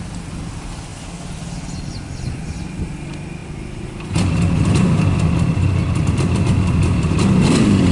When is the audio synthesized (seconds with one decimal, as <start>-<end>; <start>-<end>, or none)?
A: none